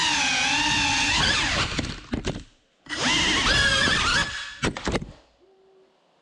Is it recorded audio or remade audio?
recorded